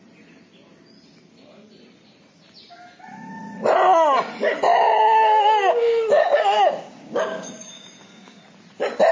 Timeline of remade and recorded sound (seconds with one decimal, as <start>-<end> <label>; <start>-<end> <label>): 0.0-4.7 recorded; 4.7-8.4 remade; 8.4-9.1 recorded